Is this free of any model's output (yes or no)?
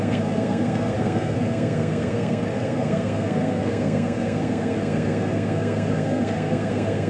no